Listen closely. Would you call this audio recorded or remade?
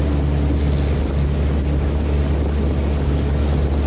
recorded